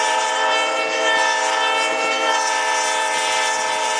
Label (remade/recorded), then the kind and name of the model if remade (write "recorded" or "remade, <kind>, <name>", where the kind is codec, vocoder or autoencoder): remade, vocoder, BigVGAN v2